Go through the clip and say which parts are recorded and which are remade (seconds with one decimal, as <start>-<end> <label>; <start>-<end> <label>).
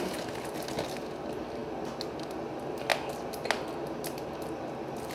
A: 0.0-5.1 recorded